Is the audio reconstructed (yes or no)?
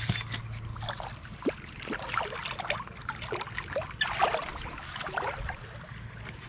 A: no